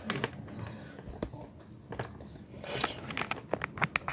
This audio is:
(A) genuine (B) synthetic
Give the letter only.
A